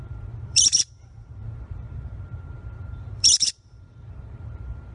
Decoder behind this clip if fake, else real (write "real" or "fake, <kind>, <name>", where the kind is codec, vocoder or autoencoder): fake, vocoder, BigVGAN v2